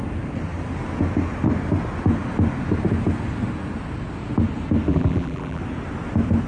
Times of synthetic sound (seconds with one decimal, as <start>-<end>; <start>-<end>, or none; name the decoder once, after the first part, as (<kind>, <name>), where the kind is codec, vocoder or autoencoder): 4.9-5.6 (vocoder, BigVGAN v2)

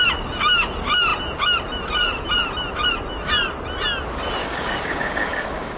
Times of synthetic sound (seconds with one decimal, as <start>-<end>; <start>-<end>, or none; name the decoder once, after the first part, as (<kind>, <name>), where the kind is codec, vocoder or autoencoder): 4.4-5.8 (codec, DAC)

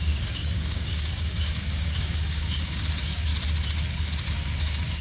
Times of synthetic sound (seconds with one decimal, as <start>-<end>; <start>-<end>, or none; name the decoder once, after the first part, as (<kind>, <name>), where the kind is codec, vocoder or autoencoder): 0.0-3.3 (codec, DAC); 4.3-5.0

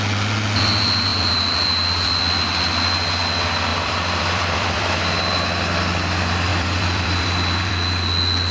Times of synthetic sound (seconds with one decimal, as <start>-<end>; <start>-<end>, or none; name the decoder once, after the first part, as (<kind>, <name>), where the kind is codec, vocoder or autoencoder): 1.1-2.2 (vocoder, BigVGAN v2); 3.7-5.3; 6.5-7.7

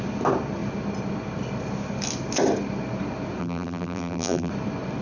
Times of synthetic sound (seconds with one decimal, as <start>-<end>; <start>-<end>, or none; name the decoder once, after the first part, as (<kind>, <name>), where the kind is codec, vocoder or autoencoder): 3.4-4.5 (vocoder, BigVGAN v2)

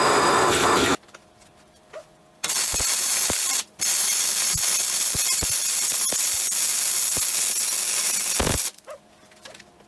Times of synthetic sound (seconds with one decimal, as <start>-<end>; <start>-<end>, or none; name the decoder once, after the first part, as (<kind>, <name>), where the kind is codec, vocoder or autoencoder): 0.0-6.7 (vocoder, BigVGAN v2); 8.5-9.9

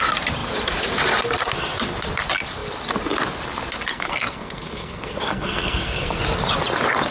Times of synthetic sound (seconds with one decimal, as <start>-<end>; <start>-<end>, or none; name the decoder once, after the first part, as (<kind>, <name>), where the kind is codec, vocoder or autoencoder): 3.9-6.2 (codec, SNAC)

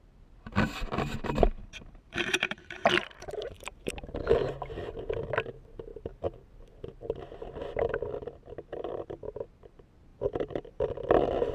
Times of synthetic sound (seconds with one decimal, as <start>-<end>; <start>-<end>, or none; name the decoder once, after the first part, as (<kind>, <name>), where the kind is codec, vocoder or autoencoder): 1.6-3.9 (vocoder, BigVGAN v2); 8.7-9.3; 10.1-10.9